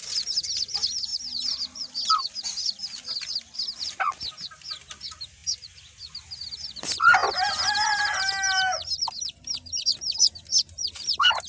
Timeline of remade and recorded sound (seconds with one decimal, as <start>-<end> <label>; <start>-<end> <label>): 0.0-11.5 recorded